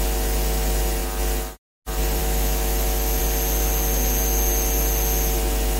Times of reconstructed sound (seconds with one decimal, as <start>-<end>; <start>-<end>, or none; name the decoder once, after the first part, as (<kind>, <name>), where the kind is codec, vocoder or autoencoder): 2.2-3.2 (autoencoder, DAC-VAE)